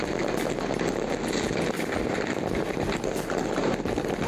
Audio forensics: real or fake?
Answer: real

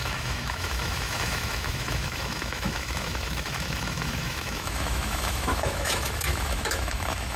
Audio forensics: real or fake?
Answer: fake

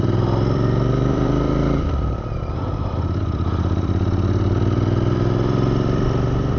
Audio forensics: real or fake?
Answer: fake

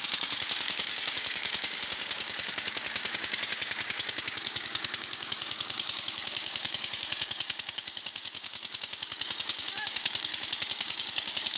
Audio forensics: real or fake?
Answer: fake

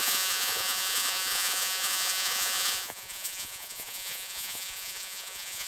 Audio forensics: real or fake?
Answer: fake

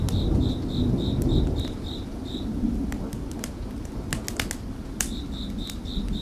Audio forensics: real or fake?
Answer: real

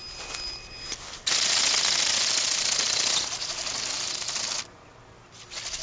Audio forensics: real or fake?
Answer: real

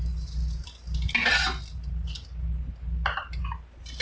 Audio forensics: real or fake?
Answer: real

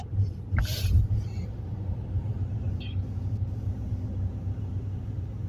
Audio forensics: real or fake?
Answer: real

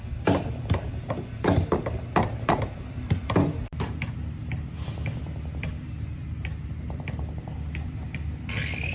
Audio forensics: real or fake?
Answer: fake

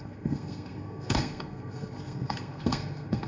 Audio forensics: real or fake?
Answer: fake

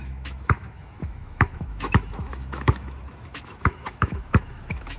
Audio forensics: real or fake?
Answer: fake